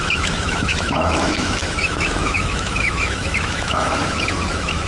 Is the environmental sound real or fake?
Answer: fake